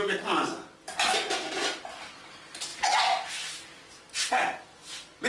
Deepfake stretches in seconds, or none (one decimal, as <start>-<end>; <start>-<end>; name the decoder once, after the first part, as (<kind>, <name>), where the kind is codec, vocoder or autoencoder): none